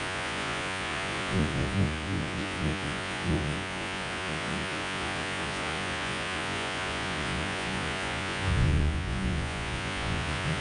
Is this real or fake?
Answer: fake